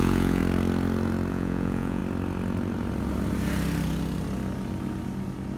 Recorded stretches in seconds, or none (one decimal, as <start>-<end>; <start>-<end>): 0.4-1.3; 2.0-5.6